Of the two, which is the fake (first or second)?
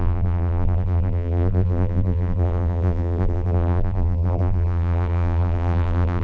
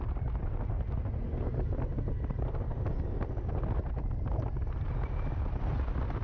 first